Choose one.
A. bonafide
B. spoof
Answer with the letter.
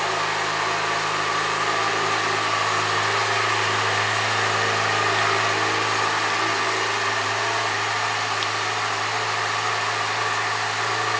A